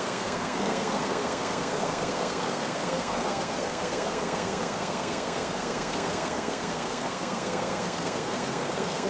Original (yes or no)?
no